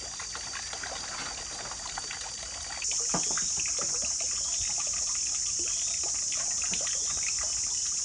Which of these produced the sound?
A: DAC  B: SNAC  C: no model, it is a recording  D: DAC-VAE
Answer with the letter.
C